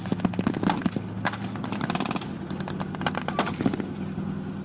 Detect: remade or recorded recorded